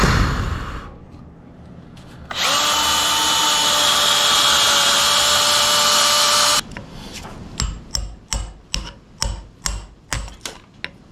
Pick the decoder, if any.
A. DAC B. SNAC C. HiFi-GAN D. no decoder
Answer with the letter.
D